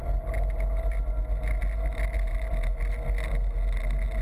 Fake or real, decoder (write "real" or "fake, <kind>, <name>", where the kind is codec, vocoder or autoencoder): real